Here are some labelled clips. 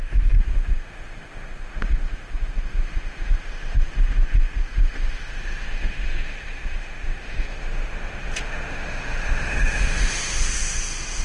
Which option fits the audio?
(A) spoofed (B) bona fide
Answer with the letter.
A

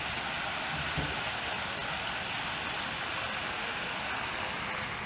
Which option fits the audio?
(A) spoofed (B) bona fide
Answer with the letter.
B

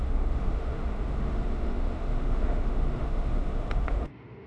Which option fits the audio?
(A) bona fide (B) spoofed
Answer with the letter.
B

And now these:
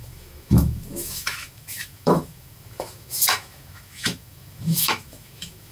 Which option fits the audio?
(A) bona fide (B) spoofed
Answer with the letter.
B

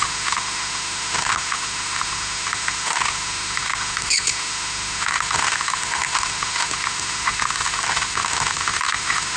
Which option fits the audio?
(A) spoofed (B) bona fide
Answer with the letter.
A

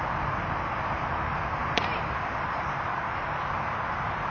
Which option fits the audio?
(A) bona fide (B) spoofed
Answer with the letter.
A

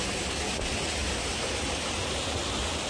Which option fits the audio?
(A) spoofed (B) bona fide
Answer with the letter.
B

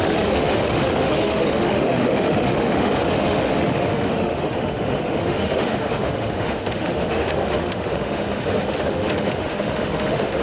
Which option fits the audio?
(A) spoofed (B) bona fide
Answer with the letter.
A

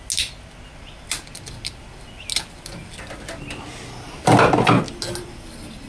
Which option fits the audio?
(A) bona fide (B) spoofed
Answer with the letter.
A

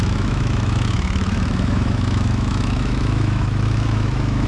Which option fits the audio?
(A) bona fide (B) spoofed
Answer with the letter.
B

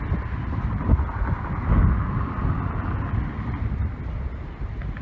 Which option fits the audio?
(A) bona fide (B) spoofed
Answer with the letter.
A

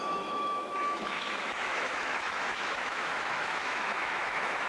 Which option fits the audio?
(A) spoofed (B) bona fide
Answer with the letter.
A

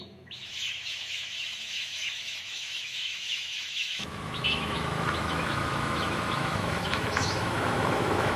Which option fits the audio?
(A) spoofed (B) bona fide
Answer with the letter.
A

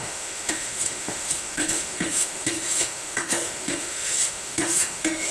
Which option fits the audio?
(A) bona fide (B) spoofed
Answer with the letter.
B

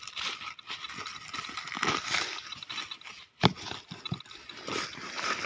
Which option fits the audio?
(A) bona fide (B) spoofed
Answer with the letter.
A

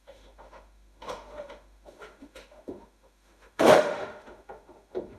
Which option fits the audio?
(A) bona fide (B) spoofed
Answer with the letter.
B